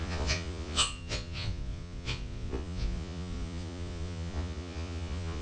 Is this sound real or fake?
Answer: fake